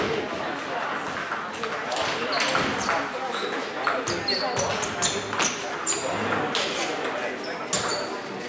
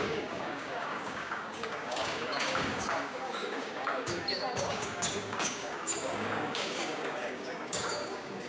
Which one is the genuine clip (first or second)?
first